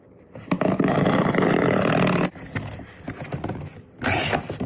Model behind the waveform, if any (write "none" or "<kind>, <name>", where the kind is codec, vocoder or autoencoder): none